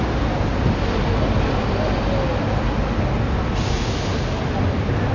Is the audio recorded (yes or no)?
yes